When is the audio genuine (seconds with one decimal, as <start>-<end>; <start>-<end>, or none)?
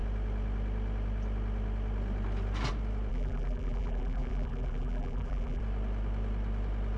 0.0-3.1; 5.6-7.0